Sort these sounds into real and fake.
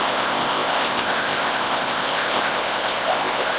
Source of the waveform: fake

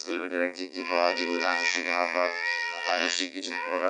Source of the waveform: fake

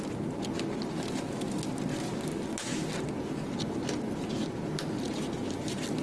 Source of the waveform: real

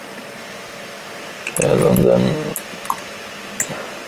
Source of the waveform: real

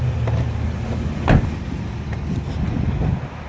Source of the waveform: real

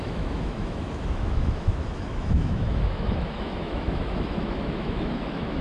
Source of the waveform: fake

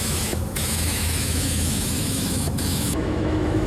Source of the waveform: fake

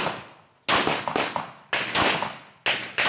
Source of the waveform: real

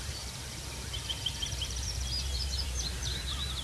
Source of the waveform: fake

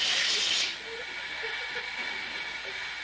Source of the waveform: real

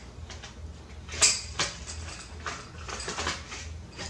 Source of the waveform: real